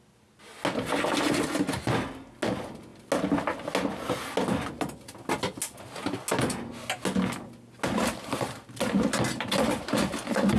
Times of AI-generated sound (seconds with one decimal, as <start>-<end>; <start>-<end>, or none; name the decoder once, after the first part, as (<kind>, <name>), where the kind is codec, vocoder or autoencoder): none